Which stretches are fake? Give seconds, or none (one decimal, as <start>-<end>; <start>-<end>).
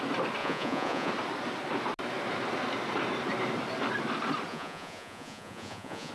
0.4-1.1; 4.5-6.1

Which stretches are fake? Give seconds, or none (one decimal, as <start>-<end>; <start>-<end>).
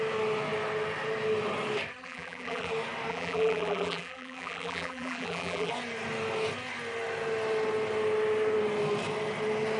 2.0-2.7; 3.1-5.7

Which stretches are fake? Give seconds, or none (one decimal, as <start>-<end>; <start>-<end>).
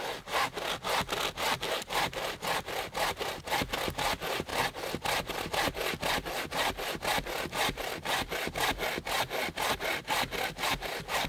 none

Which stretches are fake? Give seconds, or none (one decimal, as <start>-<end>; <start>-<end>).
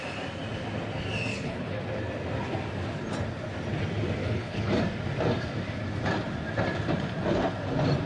1.3-1.8; 4.2-4.7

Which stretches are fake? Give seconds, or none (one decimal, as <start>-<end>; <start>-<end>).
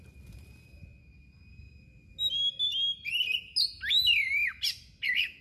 none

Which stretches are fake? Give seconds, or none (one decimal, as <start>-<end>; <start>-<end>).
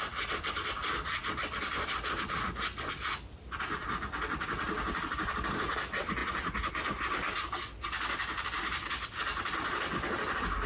none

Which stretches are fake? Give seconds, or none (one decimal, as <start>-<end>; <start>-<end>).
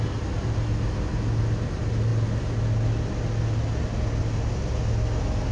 none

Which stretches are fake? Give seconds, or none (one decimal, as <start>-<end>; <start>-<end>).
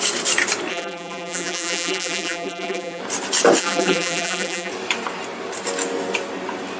0.7-3.0; 3.6-4.7